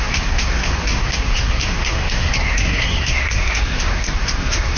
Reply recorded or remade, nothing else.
remade